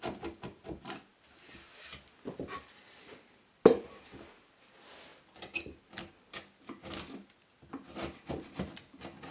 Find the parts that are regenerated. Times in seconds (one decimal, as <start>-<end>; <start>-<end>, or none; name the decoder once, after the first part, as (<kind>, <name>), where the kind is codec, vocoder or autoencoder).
none